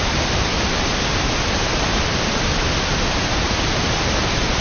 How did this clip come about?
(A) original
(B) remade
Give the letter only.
A